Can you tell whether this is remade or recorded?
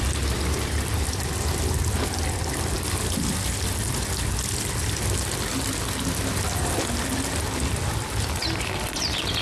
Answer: recorded